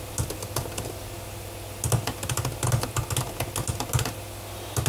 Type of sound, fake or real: real